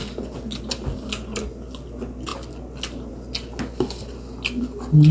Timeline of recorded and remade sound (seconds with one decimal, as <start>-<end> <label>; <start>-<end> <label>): 0.0-5.1 recorded

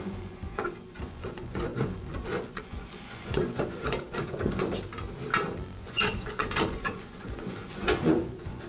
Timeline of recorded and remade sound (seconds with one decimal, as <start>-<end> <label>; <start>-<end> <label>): 0.0-4.6 remade; 4.6-5.8 recorded; 5.8-8.7 remade

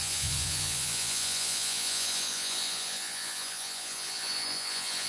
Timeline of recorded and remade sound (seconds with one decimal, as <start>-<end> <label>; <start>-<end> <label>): 0.0-5.1 remade